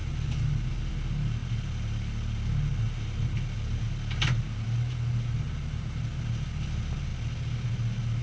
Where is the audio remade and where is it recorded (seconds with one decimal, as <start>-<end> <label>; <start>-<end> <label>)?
0.0-8.2 recorded

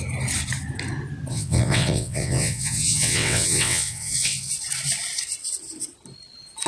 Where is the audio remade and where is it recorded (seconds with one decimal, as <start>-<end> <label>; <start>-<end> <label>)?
0.0-1.3 recorded; 1.3-4.5 remade; 4.5-6.7 recorded